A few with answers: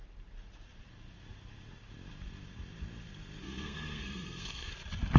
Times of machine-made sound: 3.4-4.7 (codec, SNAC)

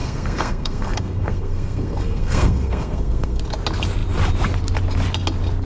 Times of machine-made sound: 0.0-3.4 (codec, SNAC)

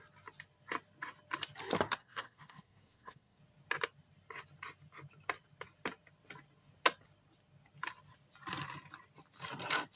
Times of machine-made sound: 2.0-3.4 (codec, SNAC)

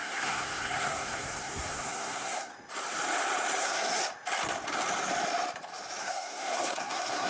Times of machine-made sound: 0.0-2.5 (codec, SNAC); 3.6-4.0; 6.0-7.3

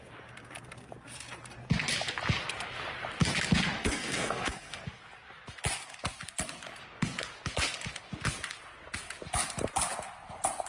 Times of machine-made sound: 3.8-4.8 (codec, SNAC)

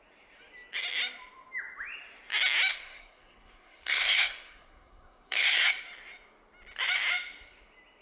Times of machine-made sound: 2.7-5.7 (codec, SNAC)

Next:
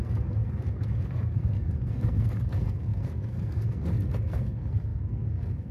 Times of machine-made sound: 0.0-5.7 (codec, SNAC)